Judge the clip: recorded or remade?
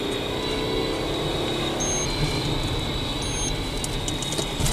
recorded